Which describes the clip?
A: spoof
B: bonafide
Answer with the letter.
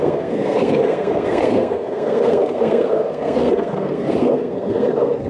A